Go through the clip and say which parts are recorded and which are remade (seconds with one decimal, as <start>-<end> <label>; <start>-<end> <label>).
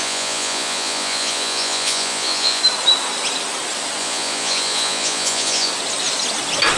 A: 0.0-2.6 remade; 2.6-4.0 recorded; 4.0-5.7 remade; 5.7-6.8 recorded